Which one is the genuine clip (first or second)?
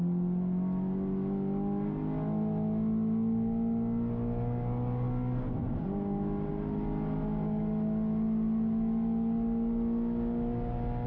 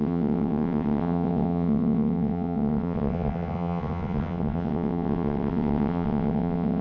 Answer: first